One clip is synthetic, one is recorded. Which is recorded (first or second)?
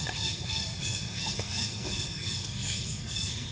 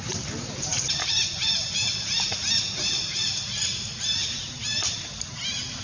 second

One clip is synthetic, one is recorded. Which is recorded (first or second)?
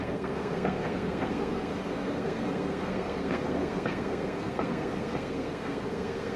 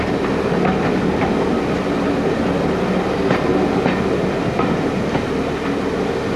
second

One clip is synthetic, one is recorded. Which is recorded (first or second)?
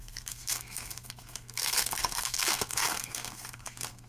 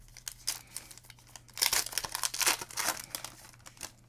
second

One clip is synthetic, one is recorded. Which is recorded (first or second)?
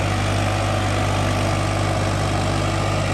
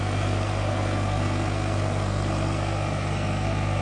first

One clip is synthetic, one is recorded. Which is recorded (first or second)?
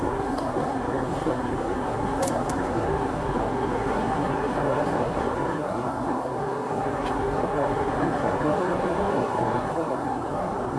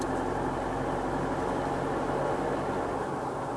second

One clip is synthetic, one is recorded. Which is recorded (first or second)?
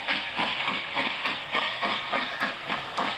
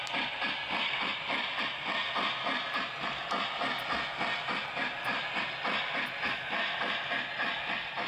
second